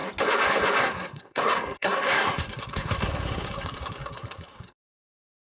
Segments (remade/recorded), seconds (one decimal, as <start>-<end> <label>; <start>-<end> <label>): 0.0-0.8 recorded; 0.8-5.5 remade